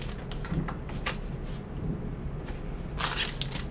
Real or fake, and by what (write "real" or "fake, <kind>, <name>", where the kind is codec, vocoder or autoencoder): real